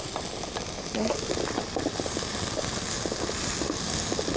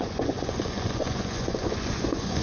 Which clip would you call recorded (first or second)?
first